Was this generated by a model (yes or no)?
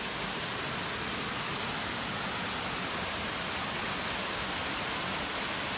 no